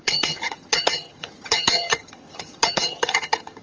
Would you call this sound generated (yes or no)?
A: yes